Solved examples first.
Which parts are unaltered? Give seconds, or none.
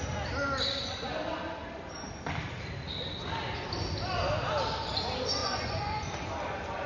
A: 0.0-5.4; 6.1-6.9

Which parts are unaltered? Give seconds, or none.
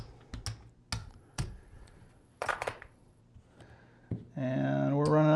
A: 0.0-1.0; 3.2-5.4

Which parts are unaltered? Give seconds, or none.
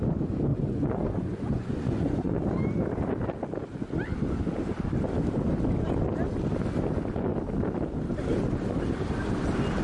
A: 0.0-0.5; 2.4-9.8